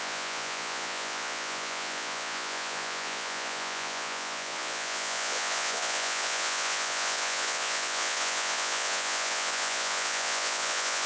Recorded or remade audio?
remade